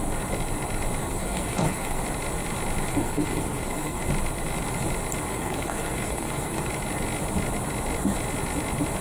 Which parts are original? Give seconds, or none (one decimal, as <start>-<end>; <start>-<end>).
0.0-1.0; 2.0-2.9; 4.0-5.3; 6.7-9.0